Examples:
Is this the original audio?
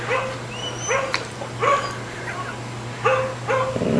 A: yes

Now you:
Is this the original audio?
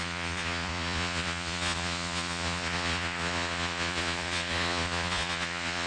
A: no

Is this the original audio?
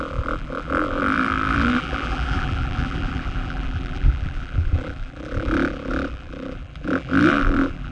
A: no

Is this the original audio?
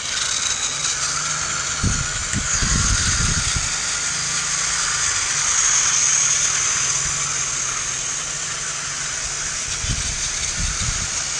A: yes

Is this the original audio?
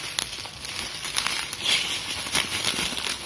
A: yes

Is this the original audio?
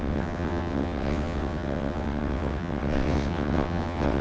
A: no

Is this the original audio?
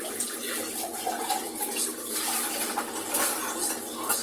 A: yes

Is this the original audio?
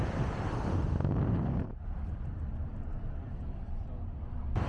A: yes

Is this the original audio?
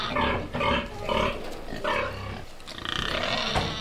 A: yes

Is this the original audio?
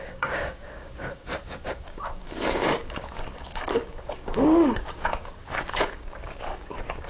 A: no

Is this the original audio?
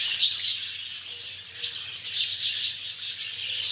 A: yes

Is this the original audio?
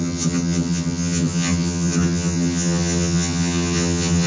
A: no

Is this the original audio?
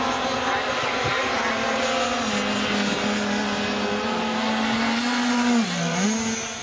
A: yes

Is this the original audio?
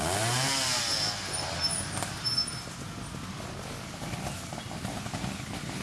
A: yes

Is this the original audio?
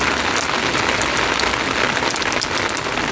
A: yes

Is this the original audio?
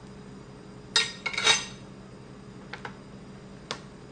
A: yes